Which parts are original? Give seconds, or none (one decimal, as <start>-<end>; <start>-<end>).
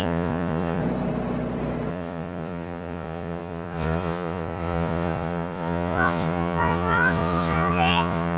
0.8-1.9